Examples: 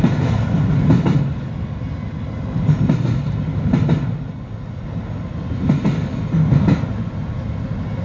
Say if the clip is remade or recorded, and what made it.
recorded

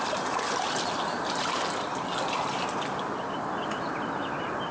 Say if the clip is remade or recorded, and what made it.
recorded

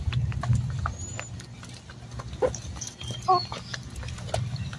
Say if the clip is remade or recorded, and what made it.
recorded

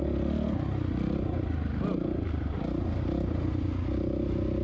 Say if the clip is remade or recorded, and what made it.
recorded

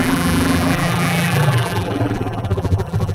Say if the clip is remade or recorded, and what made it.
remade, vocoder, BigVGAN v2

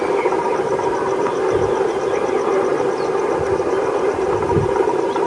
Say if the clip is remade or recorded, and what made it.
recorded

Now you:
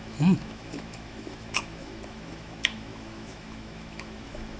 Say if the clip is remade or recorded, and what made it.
remade, autoencoder, DAC-VAE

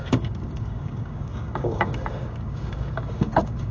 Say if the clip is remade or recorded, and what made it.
remade, codec, DAC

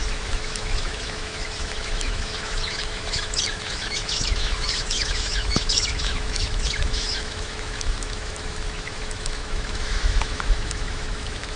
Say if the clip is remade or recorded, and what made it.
remade, autoencoder, DAC-VAE